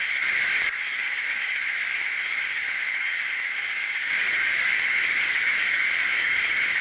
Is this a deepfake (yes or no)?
yes